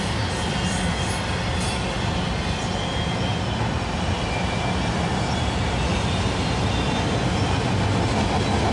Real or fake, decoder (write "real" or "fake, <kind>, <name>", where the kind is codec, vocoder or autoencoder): real